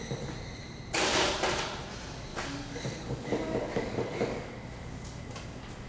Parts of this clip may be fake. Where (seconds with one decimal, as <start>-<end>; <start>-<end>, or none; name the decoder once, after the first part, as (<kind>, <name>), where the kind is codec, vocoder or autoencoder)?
2.3-5.9 (codec, DAC)